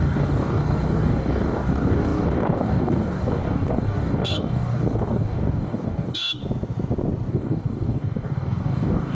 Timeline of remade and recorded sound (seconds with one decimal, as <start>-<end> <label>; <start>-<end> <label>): 0.0-6.4 remade; 6.4-7.3 recorded; 7.3-9.1 remade